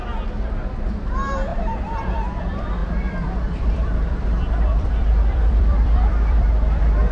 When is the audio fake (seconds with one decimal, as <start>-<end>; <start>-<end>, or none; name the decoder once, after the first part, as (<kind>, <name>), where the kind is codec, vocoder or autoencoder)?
1.5-2.4 (vocoder, BigVGAN v2); 2.8-7.1

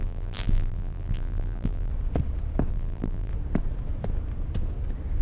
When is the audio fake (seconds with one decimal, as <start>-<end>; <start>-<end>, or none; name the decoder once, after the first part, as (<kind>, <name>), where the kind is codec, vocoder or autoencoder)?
0.0-1.9 (vocoder, BigVGAN v2); 2.7-3.3

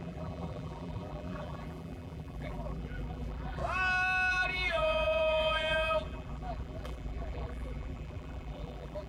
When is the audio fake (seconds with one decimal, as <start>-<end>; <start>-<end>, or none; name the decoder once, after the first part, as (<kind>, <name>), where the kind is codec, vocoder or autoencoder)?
0.0-3.6 (vocoder, BigVGAN v2); 4.3-9.1

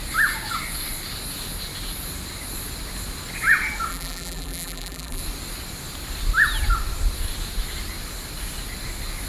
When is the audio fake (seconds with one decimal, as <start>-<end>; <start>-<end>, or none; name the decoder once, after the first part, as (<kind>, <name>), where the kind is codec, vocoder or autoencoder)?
3.9-5.2 (vocoder, BigVGAN v2)

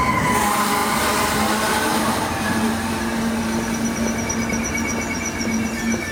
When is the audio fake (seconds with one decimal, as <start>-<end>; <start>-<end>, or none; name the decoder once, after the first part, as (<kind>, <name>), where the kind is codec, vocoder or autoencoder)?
1.9-2.7 (vocoder, BigVGAN v2)

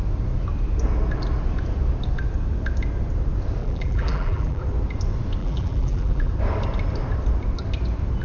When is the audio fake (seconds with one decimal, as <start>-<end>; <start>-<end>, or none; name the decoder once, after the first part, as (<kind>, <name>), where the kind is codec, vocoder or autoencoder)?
3.6-4.6 (vocoder, BigVGAN v2); 5.4-6.3